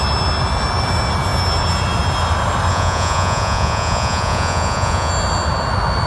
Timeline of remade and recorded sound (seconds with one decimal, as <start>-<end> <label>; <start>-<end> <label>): 0.0-2.7 recorded; 2.7-5.1 remade; 5.1-6.1 recorded